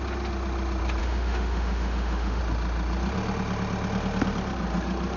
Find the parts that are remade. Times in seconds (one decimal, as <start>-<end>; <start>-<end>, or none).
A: 1.0-2.4